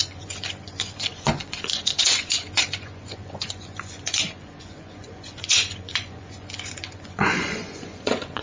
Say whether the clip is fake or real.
fake